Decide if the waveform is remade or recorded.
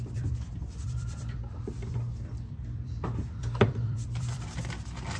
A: remade